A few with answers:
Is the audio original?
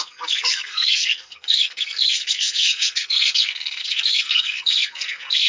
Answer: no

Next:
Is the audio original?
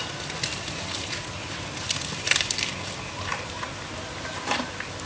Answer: no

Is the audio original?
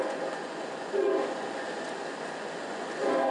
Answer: no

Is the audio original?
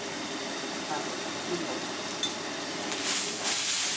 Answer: yes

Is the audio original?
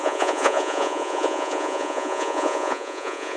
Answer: no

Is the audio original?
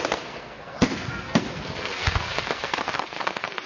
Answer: no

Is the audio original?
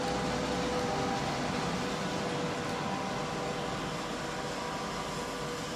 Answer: yes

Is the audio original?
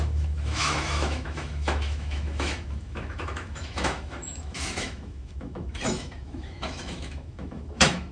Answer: no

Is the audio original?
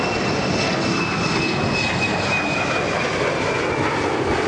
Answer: yes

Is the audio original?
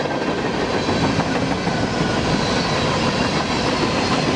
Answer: yes